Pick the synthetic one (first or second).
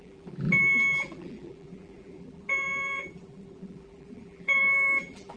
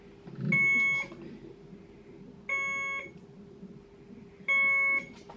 first